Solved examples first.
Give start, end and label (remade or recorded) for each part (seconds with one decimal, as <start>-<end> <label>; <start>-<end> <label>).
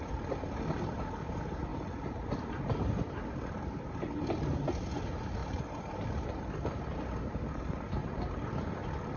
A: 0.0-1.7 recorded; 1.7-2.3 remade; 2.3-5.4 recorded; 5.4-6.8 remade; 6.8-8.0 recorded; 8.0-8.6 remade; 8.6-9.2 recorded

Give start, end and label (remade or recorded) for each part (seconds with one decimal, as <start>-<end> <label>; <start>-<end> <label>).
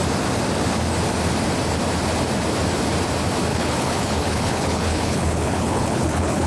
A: 0.0-3.5 recorded; 3.5-6.5 remade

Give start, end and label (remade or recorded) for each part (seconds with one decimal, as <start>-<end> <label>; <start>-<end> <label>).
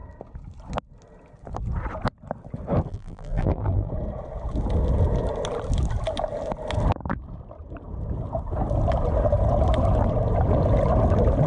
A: 0.0-2.9 recorded; 2.9-3.9 remade; 3.9-11.5 recorded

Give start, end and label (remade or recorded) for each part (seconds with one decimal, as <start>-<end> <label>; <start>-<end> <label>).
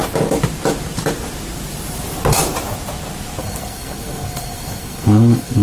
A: 0.0-3.4 recorded; 3.4-5.6 remade